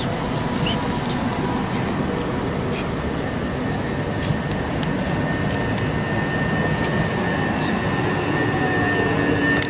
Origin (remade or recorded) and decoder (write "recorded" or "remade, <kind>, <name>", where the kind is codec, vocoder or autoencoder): recorded